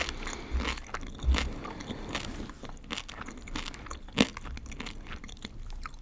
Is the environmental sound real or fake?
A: real